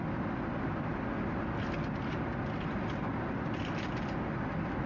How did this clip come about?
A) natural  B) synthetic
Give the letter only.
A